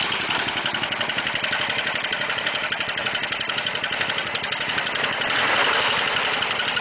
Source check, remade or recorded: recorded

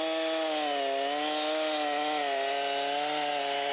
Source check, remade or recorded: recorded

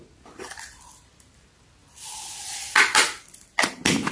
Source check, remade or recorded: recorded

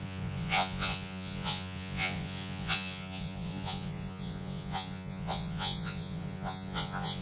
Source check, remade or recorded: remade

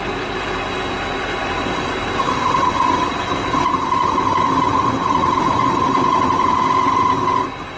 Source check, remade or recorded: remade